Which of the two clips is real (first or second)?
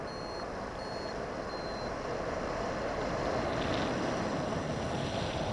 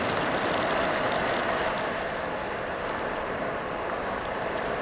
first